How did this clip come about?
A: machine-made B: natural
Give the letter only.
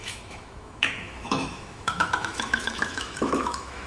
A